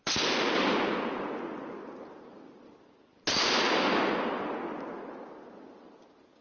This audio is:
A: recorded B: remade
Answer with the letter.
A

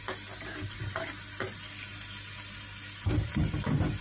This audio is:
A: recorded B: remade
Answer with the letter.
A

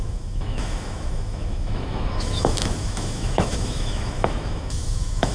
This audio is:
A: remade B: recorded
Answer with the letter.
A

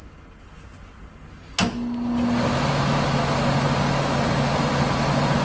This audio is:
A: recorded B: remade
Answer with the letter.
A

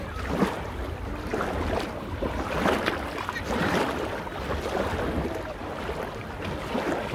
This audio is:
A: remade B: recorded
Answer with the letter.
B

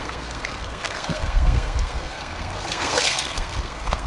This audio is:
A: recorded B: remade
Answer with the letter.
B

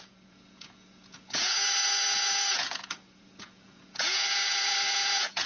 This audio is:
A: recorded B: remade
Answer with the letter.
B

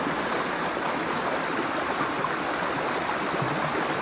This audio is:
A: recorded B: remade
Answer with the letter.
A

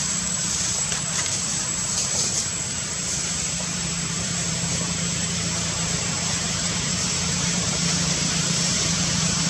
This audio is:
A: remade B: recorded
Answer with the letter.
A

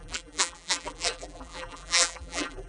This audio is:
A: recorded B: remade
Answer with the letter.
B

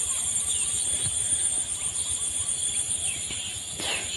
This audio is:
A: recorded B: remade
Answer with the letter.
B